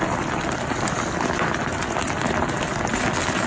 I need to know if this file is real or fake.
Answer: real